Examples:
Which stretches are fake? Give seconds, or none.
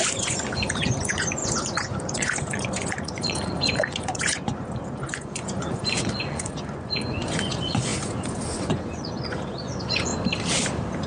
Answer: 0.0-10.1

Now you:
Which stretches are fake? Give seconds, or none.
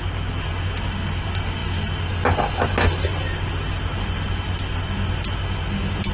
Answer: none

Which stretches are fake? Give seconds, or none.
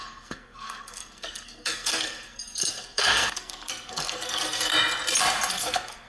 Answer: 0.0-4.7; 5.5-6.1